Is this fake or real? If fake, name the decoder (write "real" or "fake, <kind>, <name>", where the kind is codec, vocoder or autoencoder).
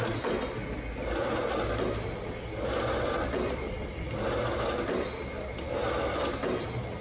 real